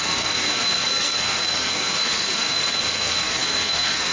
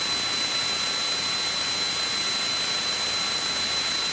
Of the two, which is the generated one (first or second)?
first